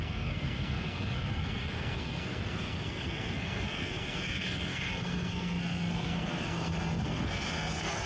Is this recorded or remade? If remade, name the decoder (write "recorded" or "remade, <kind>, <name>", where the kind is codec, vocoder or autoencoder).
remade, codec, SNAC